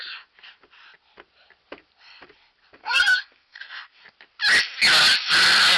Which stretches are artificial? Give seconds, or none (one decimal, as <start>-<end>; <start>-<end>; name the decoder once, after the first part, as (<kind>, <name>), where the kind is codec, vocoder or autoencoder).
2.8-4.0 (codec, SNAC)